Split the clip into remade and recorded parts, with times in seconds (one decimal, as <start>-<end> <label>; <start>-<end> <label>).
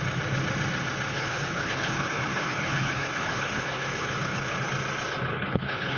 0.0-1.1 recorded; 1.1-4.7 remade; 4.7-5.3 recorded; 5.3-6.0 remade